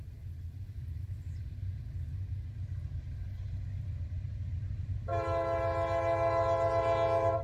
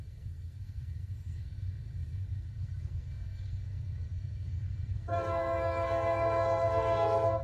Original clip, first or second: first